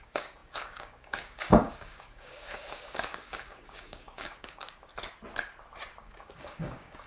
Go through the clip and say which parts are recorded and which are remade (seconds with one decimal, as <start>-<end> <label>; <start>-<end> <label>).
0.0-4.9 remade; 4.9-6.0 recorded; 6.0-7.1 remade